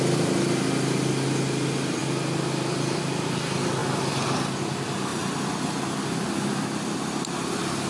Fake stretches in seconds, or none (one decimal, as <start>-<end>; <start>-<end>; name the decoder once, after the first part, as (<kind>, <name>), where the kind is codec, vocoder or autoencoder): none

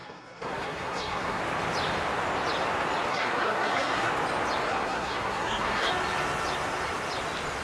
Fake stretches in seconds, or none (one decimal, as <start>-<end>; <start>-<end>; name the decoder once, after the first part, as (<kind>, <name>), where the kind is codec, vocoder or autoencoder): 0.0-1.4 (codec, SNAC); 3.1-4.1; 4.7-5.9

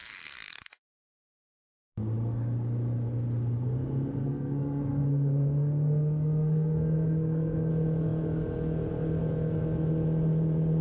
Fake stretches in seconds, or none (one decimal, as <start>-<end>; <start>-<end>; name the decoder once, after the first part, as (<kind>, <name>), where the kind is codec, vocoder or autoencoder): 0.0-1.4 (codec, SNAC); 4.2-7.7